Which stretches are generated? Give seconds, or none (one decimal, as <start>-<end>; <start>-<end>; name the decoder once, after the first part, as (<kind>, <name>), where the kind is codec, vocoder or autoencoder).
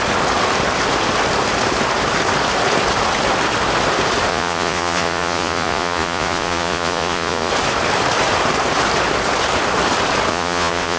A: 4.3-7.5 (vocoder, Vocos); 10.3-11.0